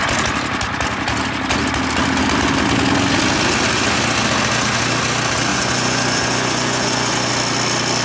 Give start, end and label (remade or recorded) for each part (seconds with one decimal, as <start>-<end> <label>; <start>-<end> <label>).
0.0-5.5 recorded; 5.5-7.3 remade; 7.3-8.0 recorded